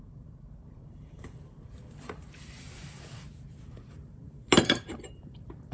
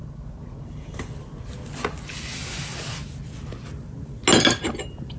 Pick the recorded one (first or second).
second